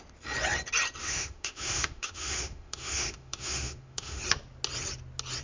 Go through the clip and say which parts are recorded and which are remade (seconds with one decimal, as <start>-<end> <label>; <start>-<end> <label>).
0.0-1.0 recorded; 1.0-4.2 remade; 4.2-5.4 recorded